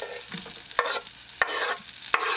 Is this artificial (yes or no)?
no